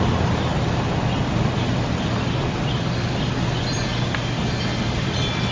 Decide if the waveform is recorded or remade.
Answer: recorded